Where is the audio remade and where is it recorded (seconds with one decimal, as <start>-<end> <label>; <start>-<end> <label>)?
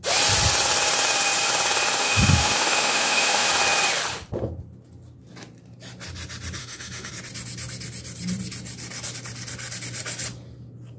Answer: 0.0-2.0 recorded; 2.0-3.5 remade; 3.5-6.6 recorded; 6.6-7.1 remade; 7.1-11.0 recorded